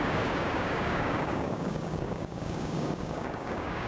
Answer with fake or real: fake